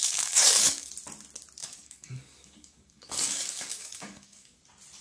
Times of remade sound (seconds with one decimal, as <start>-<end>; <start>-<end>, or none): 0.0-0.9; 1.6-4.6

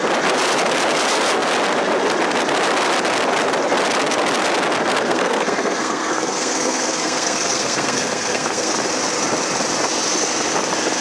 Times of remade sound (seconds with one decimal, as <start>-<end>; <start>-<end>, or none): 4.9-8.7